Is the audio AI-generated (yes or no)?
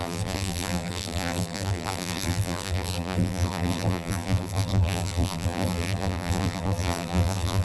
yes